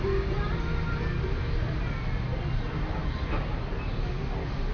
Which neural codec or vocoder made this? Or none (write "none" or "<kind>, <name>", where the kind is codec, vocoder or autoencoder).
none